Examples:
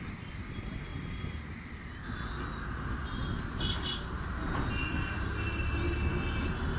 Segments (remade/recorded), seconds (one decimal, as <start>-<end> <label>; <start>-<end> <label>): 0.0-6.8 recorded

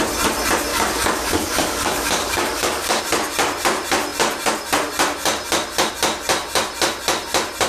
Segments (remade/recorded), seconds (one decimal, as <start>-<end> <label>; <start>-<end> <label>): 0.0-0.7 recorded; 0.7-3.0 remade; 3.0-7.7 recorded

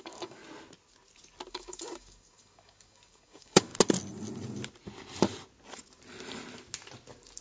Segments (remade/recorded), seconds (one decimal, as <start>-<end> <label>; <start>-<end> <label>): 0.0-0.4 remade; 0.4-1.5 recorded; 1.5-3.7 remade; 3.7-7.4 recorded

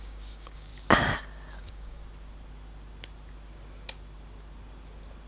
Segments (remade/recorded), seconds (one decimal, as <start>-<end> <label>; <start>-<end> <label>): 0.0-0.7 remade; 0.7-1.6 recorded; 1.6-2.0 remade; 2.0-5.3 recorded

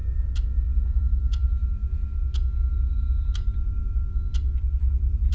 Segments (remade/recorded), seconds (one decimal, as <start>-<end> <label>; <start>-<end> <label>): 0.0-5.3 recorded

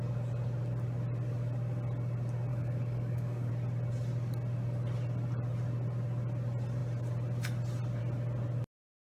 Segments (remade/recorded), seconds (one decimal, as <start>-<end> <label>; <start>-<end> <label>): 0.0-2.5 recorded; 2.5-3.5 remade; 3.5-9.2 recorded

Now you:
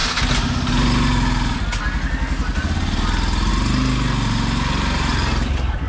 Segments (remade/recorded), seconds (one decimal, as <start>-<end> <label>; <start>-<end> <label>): 0.0-5.9 recorded

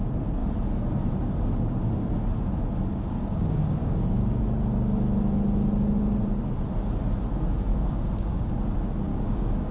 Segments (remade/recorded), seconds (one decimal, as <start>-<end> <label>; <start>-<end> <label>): 0.0-2.9 recorded; 2.9-4.4 remade; 4.4-7.7 recorded; 7.7-8.5 remade; 8.5-9.1 recorded; 9.1-9.7 remade